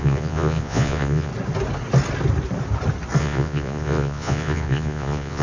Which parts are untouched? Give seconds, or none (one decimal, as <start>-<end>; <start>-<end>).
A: 1.3-3.2